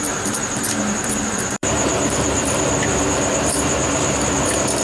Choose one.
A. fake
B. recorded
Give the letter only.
A